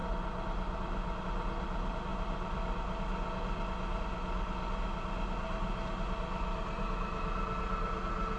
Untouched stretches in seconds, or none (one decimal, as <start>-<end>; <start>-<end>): 0.0-8.4